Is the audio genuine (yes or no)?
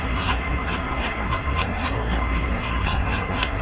no